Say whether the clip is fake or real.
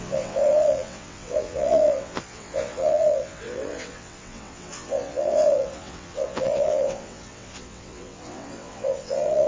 fake